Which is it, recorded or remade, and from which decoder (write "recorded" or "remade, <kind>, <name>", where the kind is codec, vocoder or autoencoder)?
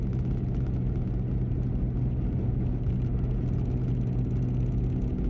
recorded